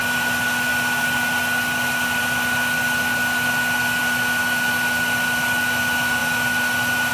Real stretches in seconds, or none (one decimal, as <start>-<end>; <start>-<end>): 0.0-7.1